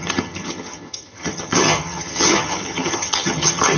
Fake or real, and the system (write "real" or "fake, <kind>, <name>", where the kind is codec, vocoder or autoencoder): fake, vocoder, HiFi-GAN